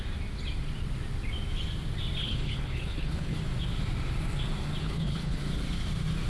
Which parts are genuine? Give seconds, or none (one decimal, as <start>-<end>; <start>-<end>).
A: 0.0-2.2; 3.4-4.8; 5.4-6.3